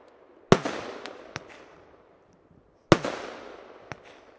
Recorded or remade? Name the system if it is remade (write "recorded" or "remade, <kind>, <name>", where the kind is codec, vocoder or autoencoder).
recorded